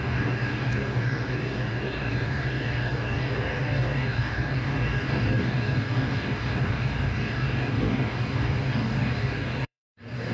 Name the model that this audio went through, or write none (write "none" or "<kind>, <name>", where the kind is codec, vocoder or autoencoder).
codec, DAC